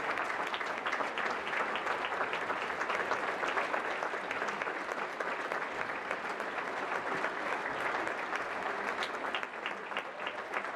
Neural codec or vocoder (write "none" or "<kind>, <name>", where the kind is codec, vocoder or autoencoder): none